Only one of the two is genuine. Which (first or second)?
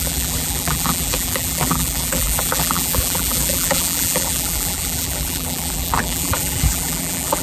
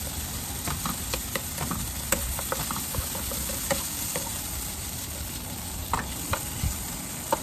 second